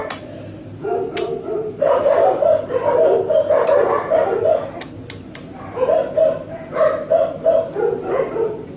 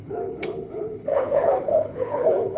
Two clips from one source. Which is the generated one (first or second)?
second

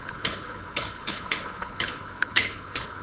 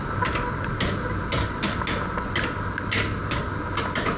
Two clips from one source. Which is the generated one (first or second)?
first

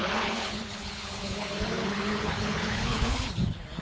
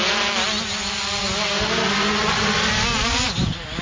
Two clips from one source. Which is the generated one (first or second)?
first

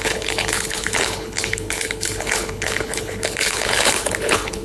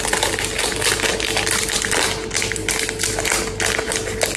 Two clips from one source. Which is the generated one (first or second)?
first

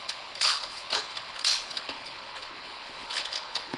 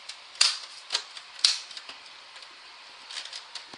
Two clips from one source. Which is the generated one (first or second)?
first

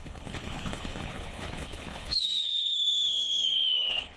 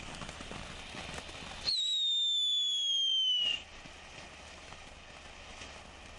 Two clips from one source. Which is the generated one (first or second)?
first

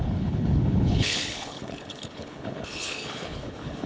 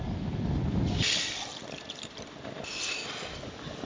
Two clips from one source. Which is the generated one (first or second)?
first